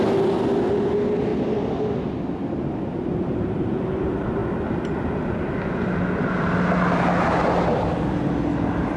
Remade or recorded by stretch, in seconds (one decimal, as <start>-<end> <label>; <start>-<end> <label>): 0.0-2.9 recorded; 2.9-3.6 remade; 3.6-9.0 recorded